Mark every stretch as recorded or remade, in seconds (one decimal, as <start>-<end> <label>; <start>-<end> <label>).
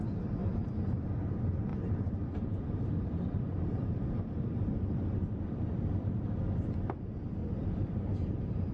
0.0-0.4 recorded; 0.4-1.1 remade; 1.1-1.7 recorded; 1.7-4.7 remade; 4.7-7.4 recorded; 7.4-8.7 remade